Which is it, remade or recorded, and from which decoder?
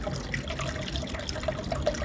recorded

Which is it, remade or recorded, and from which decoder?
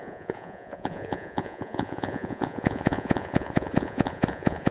remade, vocoder, Vocos